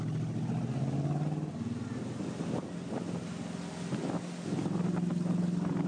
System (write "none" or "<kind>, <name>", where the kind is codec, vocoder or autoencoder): none